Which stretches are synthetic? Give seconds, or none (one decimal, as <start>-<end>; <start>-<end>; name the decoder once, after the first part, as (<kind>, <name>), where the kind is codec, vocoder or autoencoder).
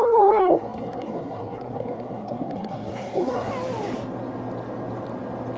0.0-3.5 (codec, SNAC)